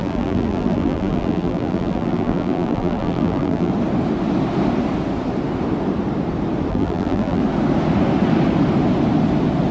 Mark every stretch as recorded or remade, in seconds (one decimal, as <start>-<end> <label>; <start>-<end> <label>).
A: 0.0-3.7 remade; 3.7-6.7 recorded; 6.7-7.4 remade; 7.4-9.7 recorded